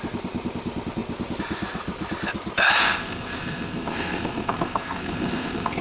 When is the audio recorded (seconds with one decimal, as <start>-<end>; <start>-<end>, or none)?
0.0-2.8